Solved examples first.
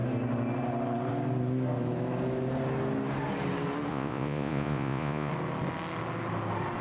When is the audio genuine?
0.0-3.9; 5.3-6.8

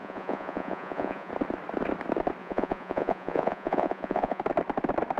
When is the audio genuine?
1.3-2.4; 4.4-5.2

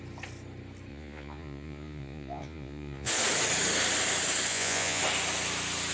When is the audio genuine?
0.0-0.9; 3.1-4.5; 5.0-5.9

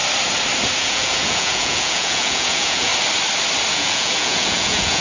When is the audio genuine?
0.0-0.8; 2.9-3.7